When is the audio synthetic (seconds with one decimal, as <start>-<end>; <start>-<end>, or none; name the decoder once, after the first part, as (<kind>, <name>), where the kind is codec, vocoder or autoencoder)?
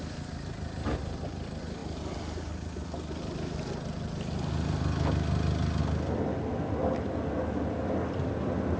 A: none